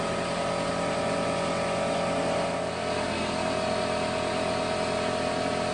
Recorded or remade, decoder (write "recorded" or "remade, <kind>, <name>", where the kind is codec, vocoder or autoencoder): recorded